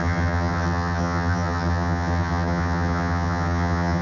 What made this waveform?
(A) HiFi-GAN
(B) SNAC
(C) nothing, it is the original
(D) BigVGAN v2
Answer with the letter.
A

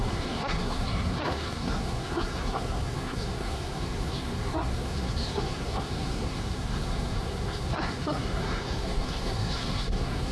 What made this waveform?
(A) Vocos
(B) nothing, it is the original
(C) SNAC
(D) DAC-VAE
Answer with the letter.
C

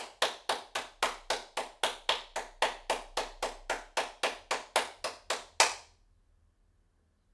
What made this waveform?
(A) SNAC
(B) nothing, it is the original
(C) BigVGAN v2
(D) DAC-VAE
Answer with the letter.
B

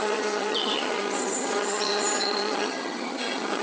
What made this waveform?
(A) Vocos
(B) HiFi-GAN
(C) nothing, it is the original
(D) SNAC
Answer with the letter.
B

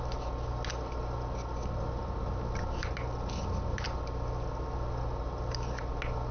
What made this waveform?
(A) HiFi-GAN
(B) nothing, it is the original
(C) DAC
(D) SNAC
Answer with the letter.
B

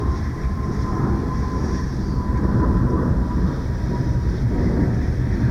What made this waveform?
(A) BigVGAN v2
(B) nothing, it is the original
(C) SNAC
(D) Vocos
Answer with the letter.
A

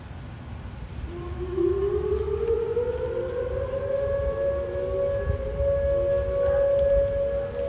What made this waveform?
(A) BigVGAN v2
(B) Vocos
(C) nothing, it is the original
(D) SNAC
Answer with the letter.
C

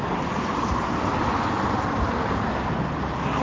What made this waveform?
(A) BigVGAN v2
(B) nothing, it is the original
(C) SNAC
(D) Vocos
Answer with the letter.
B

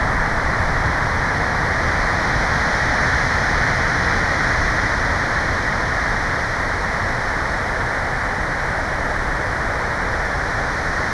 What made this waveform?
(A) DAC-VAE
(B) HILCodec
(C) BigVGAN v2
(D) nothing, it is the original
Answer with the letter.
D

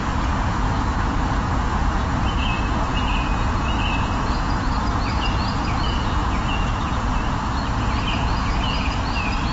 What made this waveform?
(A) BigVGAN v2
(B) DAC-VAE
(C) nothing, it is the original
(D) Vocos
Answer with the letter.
D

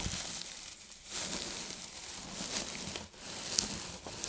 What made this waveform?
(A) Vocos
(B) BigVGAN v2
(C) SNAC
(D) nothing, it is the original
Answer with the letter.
D